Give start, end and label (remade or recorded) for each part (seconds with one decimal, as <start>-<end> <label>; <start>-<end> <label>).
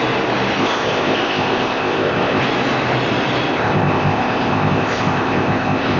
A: 0.0-0.6 recorded; 0.6-2.4 remade; 2.4-3.5 recorded; 3.5-6.0 remade